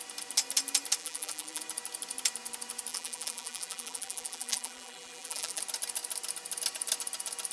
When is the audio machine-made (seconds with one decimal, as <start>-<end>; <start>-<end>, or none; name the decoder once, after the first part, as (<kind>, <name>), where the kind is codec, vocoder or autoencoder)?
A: 1.0-1.6 (vocoder, BigVGAN v2); 2.9-5.6